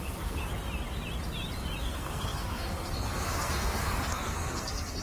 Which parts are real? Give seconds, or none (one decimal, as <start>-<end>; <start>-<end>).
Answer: 0.4-1.8